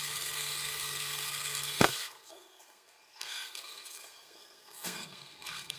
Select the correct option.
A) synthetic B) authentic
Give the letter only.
A